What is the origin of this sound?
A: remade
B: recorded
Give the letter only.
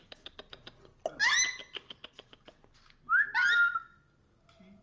B